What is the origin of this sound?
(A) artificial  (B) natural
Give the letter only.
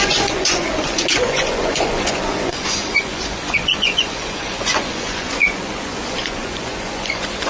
A